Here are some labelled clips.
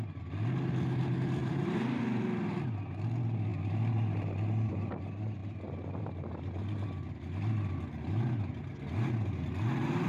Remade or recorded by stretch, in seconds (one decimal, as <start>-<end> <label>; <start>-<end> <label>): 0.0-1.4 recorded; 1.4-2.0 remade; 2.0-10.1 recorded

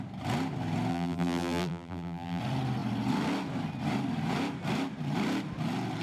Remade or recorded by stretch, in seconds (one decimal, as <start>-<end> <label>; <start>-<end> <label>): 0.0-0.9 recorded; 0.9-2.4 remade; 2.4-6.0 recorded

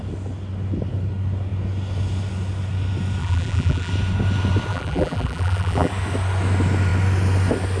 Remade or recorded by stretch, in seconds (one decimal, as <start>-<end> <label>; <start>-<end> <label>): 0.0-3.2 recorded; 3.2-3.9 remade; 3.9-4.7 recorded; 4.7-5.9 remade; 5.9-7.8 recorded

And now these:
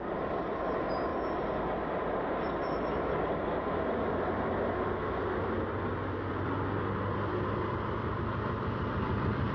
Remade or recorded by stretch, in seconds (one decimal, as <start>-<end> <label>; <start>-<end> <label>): 0.0-9.5 recorded

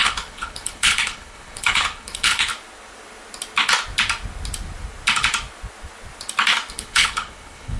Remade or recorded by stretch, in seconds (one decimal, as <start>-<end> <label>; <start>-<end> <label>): 0.0-2.5 remade; 2.5-6.7 recorded; 6.7-7.8 remade

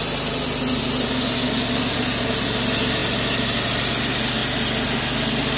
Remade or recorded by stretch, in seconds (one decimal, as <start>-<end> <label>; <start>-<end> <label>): 0.0-5.6 recorded